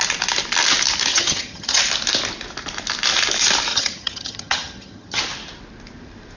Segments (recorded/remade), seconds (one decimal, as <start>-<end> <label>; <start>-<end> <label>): 0.0-1.1 recorded; 1.1-1.8 remade; 1.8-3.7 recorded; 3.7-5.2 remade; 5.2-6.4 recorded